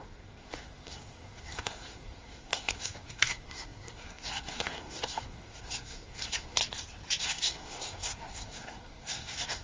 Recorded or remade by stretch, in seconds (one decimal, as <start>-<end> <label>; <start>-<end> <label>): 0.0-6.6 remade; 6.6-7.2 recorded; 7.2-9.6 remade